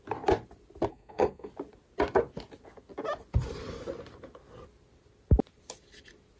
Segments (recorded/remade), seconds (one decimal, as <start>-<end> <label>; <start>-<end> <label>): 0.0-0.9 recorded; 0.9-1.5 remade; 1.5-6.4 recorded